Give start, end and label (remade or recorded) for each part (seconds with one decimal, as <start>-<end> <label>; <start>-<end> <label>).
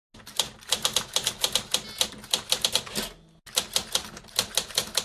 0.0-5.0 recorded